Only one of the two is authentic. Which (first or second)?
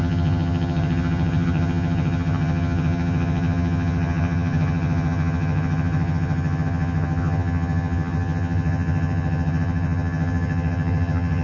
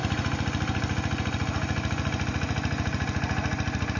second